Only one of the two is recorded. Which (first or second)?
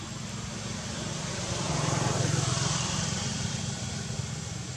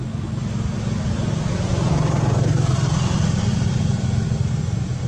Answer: second